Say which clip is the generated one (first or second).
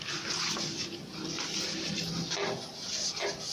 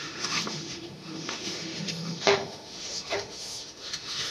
second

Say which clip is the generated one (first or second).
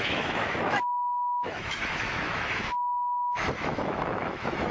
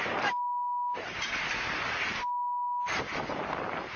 first